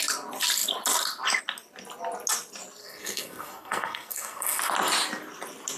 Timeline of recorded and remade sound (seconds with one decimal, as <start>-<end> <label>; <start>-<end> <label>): 0.0-2.8 recorded; 2.8-4.6 remade; 4.6-5.8 recorded